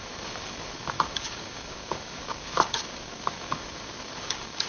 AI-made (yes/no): yes